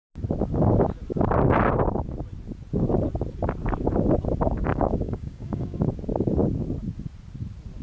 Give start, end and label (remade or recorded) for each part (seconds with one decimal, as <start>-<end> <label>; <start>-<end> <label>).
0.0-4.7 recorded; 4.7-5.9 remade; 5.9-7.8 recorded